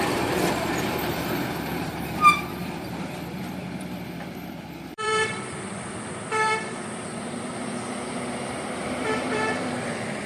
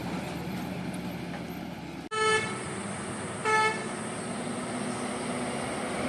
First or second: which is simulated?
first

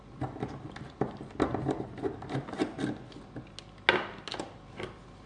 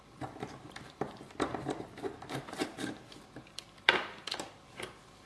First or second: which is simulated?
second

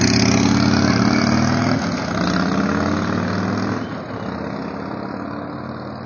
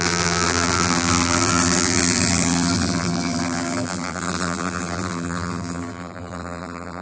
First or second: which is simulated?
second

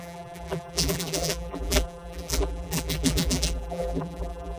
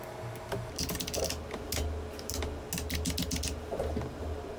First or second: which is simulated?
first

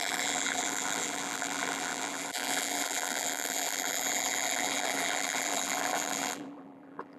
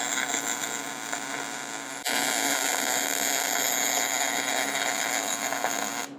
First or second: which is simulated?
first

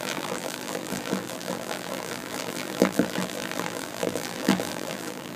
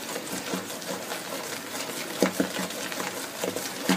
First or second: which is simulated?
first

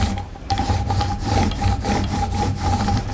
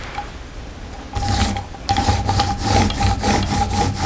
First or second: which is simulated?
first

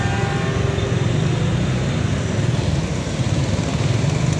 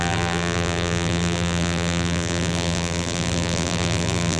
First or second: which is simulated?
second